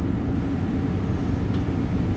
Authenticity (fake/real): real